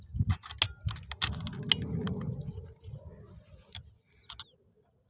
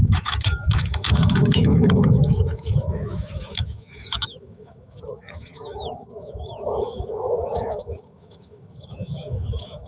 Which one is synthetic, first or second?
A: second